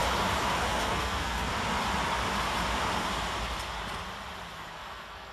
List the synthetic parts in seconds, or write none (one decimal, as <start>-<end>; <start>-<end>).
0.6-1.5; 4.7-5.3